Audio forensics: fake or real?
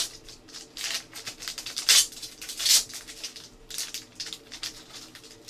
real